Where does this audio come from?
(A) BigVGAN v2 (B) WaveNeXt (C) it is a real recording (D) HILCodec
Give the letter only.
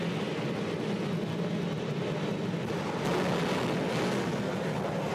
C